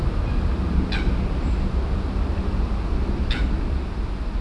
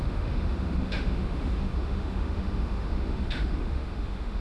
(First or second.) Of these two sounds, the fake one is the second